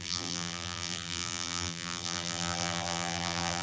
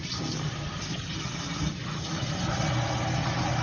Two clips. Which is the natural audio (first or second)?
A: second